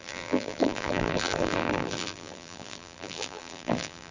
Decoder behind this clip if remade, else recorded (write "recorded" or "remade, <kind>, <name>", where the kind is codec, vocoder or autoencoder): remade, vocoder, BigVGAN v2